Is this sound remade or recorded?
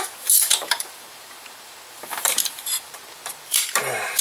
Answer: remade